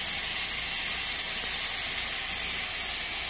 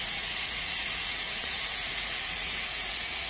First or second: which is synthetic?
second